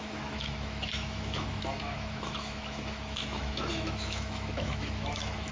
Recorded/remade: remade